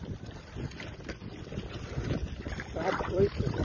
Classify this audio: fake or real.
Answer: fake